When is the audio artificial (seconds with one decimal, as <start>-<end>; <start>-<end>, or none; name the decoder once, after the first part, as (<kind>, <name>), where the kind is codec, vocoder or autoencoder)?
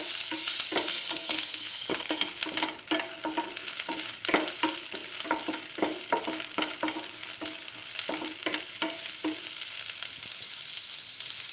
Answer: 0.9-2.2 (codec, SNAC)